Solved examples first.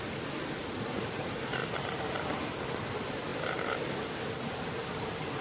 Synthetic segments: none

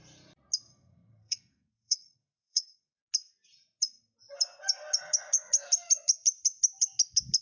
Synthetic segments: 0.7-3.0

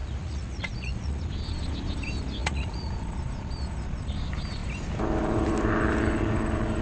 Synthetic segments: 0.0-1.2; 2.4-2.9

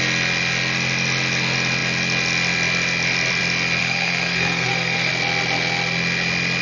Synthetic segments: 3.8-5.1

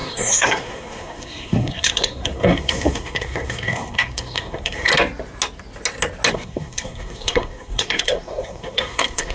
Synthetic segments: 0.0-4.9; 6.3-9.3